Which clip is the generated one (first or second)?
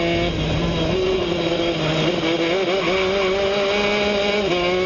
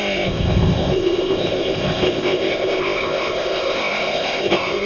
second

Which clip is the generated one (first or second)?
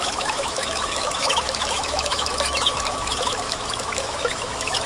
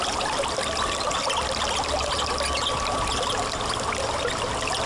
first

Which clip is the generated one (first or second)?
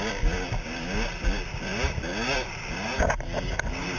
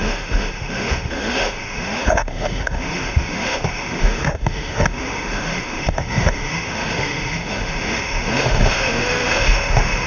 second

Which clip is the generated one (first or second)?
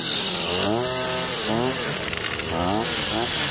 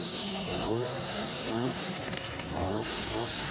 second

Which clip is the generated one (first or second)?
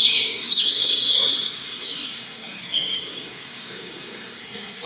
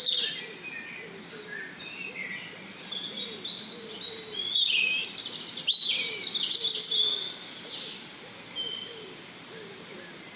first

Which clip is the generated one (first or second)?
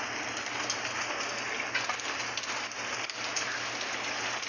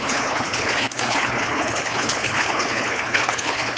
second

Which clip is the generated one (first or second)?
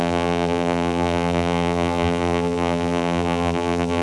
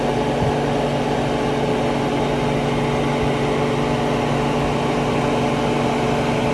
first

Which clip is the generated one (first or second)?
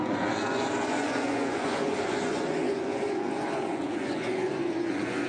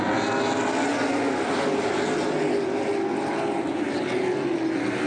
first